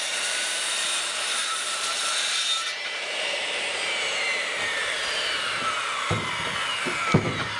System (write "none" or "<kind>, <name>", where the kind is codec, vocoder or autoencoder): vocoder, BigVGAN v2